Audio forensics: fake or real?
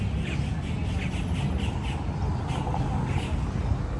real